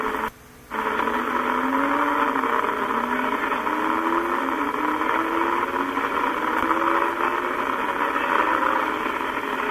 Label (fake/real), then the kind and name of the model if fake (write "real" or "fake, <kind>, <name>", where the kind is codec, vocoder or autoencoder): real